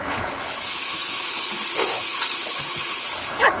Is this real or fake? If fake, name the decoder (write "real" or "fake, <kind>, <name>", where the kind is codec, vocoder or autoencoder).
fake, codec, HILCodec